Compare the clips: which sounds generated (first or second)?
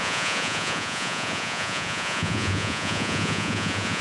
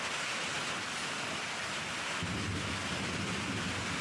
first